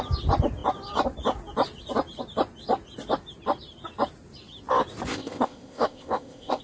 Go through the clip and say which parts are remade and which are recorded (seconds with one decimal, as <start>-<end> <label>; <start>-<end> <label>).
0.0-5.1 recorded; 5.1-6.6 remade